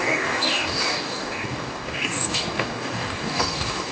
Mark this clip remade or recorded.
remade